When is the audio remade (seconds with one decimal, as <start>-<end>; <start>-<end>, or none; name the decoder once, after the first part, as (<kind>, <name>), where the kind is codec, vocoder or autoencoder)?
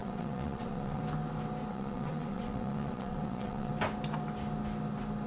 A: 0.0-1.0 (vocoder, WaveNeXt); 1.7-3.7